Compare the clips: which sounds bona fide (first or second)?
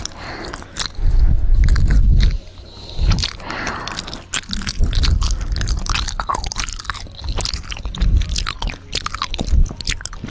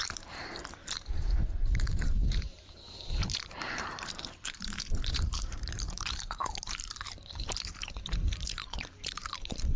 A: first